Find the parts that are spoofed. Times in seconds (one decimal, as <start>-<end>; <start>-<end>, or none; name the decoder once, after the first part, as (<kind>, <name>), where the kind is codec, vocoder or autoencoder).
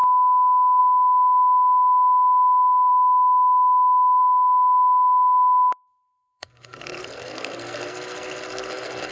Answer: 0.8-2.9 (codec, SNAC); 4.2-9.1